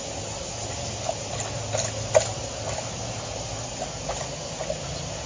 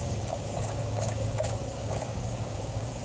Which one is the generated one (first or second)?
second